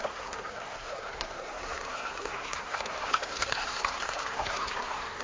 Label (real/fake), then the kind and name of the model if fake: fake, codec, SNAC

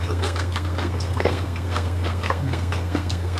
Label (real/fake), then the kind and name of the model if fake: fake, codec, SNAC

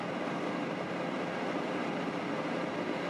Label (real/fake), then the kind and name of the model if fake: real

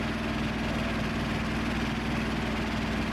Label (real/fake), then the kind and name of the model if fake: real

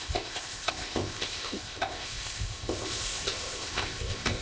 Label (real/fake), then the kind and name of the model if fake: fake, codec, ZipCodec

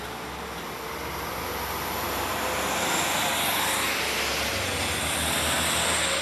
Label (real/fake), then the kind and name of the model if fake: real